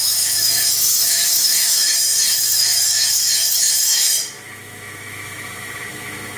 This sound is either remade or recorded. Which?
remade